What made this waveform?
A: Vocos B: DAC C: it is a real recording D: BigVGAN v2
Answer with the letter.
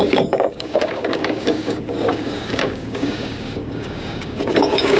B